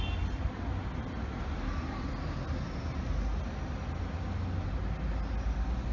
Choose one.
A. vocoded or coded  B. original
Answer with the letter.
B